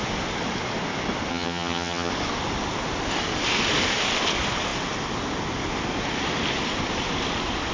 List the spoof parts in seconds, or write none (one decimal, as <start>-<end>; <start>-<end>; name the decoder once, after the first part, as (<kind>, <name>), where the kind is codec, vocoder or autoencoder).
1.3-2.1 (vocoder, HiFi-GAN)